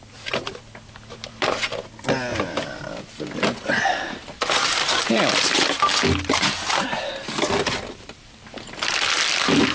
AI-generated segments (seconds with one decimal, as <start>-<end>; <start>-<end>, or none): 0.0-5.9; 7.7-9.7